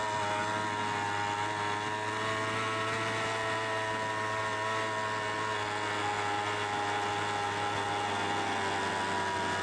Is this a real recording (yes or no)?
yes